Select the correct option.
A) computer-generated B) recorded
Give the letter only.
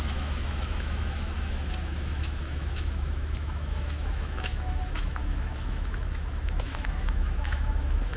A